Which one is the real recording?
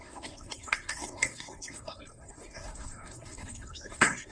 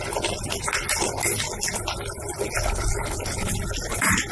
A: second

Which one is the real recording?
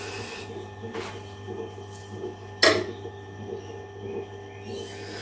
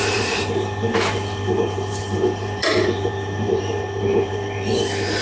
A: first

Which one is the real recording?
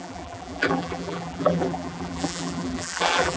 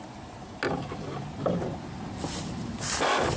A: second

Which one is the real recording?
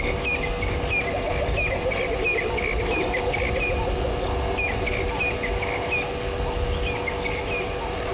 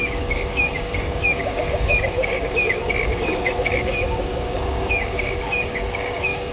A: first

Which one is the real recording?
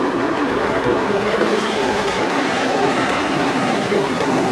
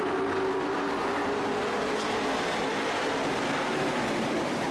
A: second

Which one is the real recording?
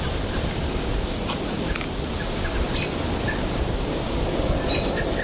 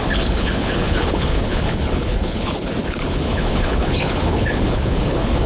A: first